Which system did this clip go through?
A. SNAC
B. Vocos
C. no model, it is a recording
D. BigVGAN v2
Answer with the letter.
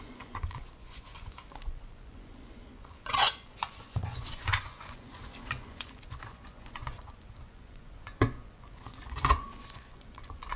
B